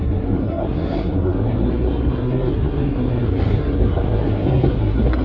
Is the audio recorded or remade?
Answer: remade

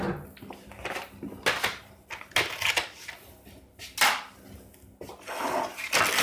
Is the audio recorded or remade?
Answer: recorded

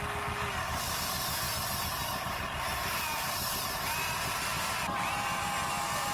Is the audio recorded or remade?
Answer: recorded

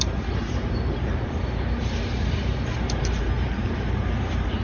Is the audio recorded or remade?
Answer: remade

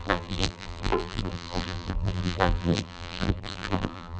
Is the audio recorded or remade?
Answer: remade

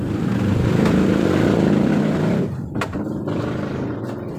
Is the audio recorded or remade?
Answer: remade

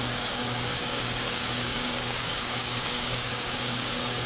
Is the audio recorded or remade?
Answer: remade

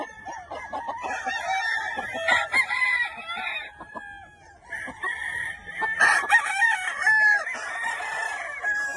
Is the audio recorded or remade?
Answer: recorded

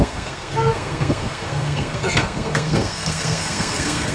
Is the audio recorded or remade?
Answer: remade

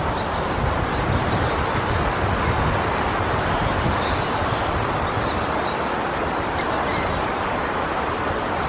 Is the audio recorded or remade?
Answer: recorded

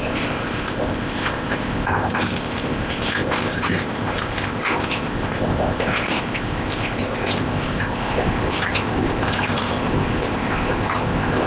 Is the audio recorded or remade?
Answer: remade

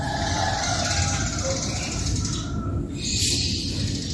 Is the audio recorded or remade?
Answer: recorded